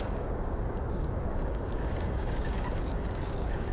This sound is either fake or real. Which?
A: fake